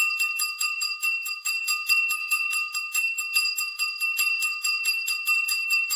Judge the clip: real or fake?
fake